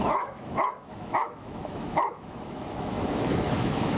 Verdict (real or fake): fake